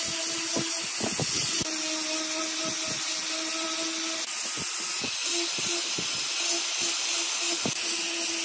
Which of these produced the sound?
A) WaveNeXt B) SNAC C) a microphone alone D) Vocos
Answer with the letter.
C